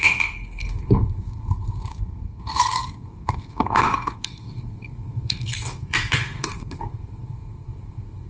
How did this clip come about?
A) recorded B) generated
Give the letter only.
B